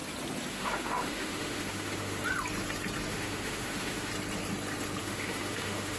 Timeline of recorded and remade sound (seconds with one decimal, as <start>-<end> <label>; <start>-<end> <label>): 0.0-0.5 recorded; 0.5-2.2 remade; 2.2-3.1 recorded; 3.1-4.1 remade; 4.1-5.0 recorded; 5.0-6.0 remade